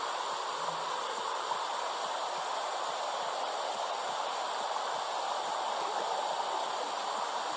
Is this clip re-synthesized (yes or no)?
no